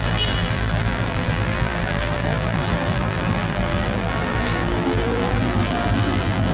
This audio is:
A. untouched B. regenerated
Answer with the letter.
B